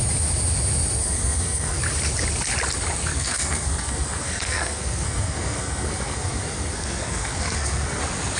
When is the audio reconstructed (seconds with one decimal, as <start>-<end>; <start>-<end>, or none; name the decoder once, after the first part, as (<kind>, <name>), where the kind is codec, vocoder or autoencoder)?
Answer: 1.0-1.8 (codec, SNAC); 3.1-8.0